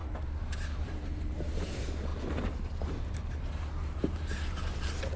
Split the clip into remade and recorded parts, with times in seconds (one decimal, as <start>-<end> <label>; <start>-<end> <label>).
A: 0.0-5.2 remade